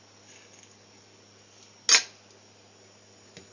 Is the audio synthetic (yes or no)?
no